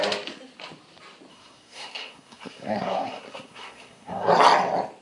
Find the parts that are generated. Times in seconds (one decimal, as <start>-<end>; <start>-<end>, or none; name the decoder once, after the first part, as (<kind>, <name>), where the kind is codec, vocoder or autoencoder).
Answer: 1.3-4.3 (codec, SNAC)